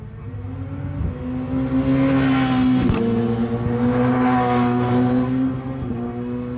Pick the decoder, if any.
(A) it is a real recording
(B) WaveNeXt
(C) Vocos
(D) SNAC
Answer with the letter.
A